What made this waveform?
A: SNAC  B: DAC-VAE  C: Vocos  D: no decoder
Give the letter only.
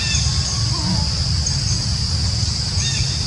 D